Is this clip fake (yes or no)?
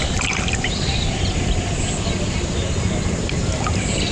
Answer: no